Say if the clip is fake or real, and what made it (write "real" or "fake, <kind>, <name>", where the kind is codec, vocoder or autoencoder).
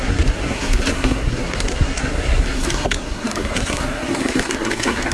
fake, codec, SNAC